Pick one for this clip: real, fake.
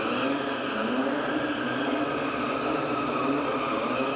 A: real